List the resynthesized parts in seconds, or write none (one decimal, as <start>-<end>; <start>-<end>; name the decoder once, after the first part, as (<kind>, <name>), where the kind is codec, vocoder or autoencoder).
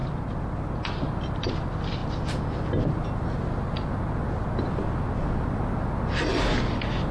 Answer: none